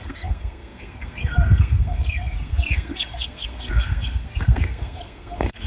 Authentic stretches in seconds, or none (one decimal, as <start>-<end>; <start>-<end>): none